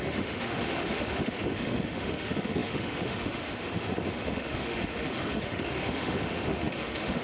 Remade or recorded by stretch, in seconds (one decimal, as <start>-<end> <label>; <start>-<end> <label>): 0.0-7.2 remade